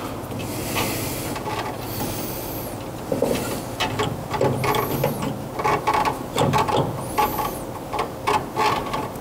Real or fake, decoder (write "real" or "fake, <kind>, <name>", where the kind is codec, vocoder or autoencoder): real